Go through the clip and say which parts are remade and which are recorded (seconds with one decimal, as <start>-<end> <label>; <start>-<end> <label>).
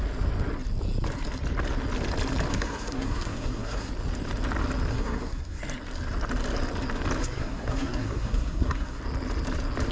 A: 0.0-2.5 recorded; 2.5-3.9 remade; 3.9-4.9 recorded; 4.9-5.6 remade; 5.6-7.2 recorded; 7.2-9.0 remade; 9.0-9.9 recorded